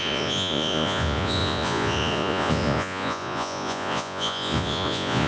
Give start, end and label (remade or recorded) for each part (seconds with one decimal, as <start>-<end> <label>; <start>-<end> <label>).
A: 0.0-5.3 remade